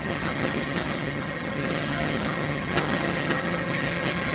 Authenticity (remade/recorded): remade